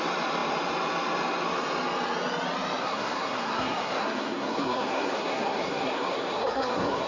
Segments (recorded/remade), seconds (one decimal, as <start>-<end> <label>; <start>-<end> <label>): 0.0-2.8 recorded; 2.8-7.1 remade